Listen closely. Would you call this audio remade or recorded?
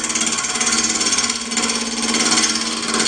recorded